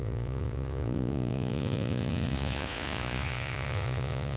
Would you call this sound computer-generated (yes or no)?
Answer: yes